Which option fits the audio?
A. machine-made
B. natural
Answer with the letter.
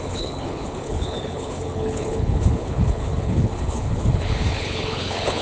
A